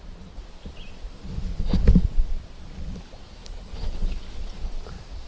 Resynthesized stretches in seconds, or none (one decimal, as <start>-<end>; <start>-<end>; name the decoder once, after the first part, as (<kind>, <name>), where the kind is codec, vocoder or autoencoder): 3.4-4.6 (codec, HILCodec)